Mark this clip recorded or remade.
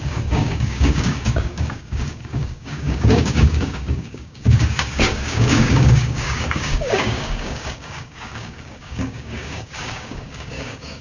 remade